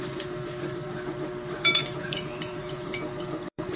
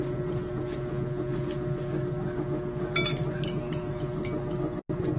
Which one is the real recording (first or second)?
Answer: second